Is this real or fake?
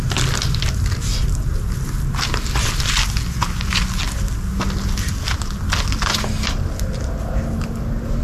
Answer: real